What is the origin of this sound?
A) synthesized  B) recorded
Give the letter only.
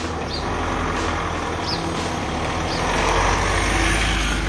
B